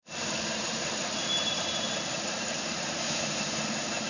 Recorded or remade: remade